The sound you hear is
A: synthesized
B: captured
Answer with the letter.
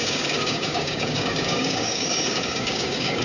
A